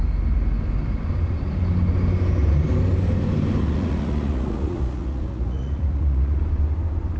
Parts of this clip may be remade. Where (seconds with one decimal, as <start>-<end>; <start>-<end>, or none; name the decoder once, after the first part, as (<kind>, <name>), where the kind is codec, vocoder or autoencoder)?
3.6-6.4 (vocoder, Vocos)